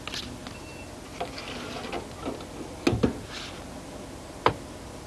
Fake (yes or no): no